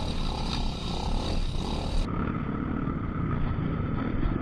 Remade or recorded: recorded